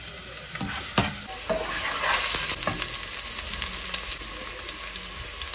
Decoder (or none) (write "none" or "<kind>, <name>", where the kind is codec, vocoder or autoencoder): none